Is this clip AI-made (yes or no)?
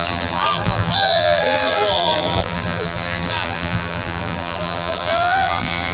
yes